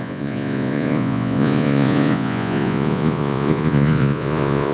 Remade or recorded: remade